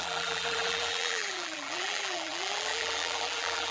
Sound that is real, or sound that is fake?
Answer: fake